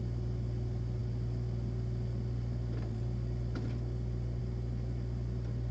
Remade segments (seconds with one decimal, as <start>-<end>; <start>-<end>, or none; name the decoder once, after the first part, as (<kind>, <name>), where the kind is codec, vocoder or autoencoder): none